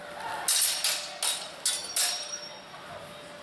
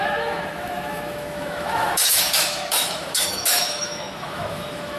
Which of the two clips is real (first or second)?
first